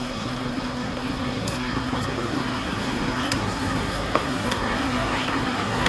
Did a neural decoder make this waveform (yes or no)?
yes